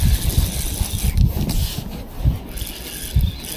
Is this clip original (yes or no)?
yes